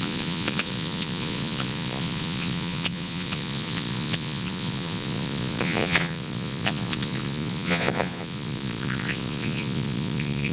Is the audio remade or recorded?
remade